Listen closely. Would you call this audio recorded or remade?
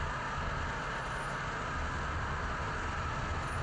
recorded